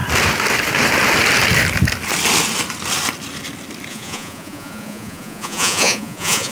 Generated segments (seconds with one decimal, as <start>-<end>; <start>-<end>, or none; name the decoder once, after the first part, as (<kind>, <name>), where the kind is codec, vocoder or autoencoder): 3.9-6.5 (vocoder, Vocos)